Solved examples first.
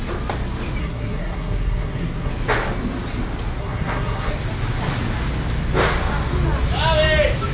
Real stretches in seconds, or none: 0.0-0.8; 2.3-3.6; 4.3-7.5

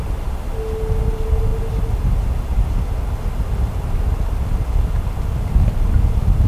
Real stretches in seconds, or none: 0.0-6.5

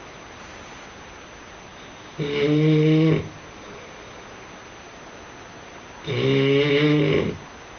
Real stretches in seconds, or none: 0.0-7.8

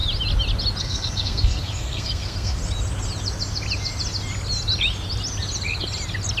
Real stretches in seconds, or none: 0.0-0.8; 2.6-6.4

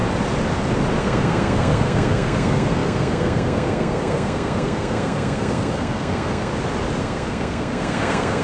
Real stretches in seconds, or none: 0.0-1.0; 6.5-7.0